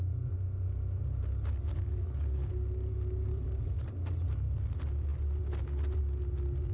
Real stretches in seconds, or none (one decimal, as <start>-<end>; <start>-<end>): 0.0-1.7; 2.5-3.3; 3.9-6.7